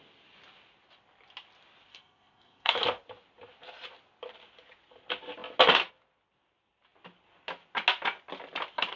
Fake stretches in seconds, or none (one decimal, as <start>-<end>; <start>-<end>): 1.9-2.8